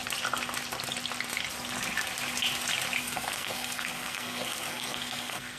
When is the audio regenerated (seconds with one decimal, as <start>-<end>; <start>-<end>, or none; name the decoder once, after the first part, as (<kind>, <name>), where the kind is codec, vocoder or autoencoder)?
3.0-5.6 (codec, SNAC)